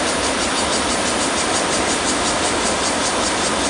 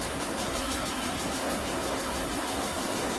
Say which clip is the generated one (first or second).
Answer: second